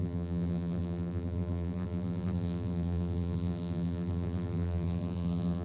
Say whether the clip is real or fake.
fake